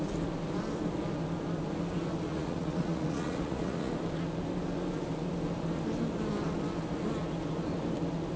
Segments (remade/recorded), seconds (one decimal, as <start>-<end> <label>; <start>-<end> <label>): 0.0-2.3 recorded; 2.3-3.9 remade; 3.9-8.4 recorded